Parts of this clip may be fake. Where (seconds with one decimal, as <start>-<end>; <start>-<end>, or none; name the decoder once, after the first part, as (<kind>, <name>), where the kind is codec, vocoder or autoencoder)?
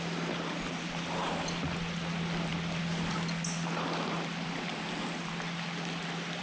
none